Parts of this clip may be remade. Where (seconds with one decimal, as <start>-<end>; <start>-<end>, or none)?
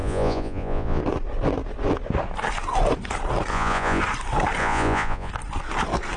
0.0-1.0; 3.5-4.0; 4.6-5.3